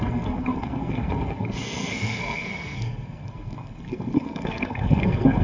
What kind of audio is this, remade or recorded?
remade